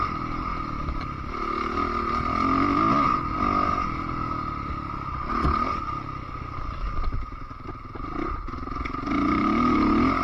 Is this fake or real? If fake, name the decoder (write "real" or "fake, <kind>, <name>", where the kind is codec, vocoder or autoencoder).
real